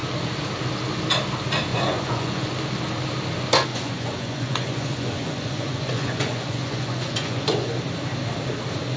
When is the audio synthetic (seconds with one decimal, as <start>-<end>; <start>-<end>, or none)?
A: 1.7-2.5; 3.7-7.7